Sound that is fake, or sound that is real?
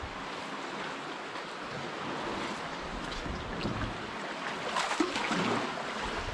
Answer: real